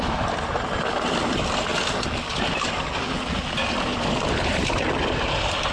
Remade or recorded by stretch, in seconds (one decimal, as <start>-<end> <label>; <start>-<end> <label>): 0.0-5.7 recorded